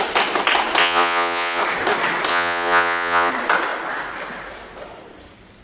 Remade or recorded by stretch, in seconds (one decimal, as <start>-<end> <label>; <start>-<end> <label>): 0.0-0.8 recorded; 0.8-1.6 remade; 1.6-2.3 recorded; 2.3-3.3 remade; 3.3-5.6 recorded